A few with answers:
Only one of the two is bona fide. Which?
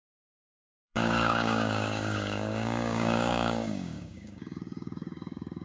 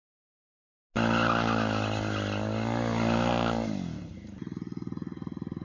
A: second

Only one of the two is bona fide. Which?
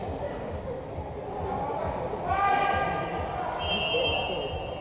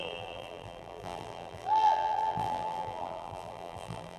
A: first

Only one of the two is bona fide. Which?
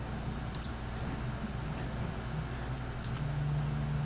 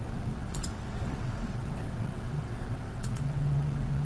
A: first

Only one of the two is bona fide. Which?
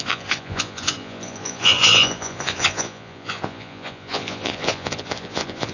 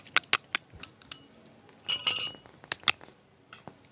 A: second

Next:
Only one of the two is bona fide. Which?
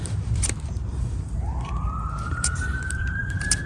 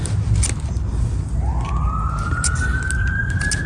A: second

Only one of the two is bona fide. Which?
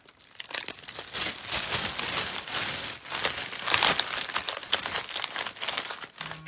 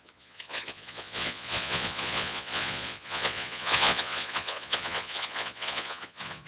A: first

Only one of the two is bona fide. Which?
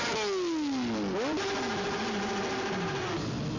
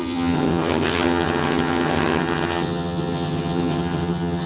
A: first